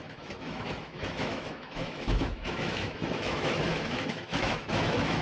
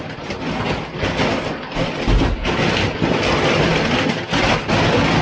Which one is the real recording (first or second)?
second